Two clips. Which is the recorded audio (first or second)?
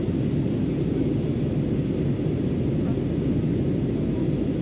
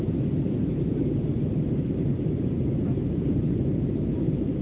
first